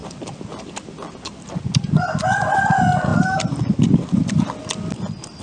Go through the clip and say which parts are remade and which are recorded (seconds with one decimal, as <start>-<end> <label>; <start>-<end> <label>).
0.0-5.4 recorded